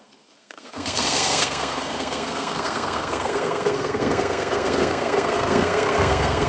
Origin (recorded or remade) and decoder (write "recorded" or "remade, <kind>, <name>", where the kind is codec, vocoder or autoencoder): remade, codec, SNAC